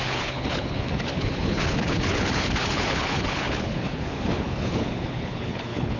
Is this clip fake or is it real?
fake